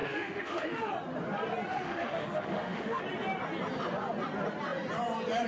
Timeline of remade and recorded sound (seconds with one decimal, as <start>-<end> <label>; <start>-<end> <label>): 0.0-0.9 remade; 0.9-1.7 recorded; 1.7-3.0 remade; 3.0-5.5 recorded